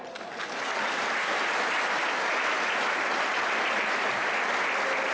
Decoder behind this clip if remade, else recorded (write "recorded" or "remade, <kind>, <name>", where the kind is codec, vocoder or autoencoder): recorded